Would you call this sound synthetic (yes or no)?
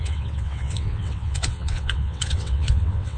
yes